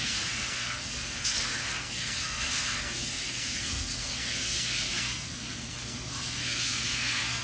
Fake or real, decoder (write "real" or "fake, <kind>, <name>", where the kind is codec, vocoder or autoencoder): fake, codec, SNAC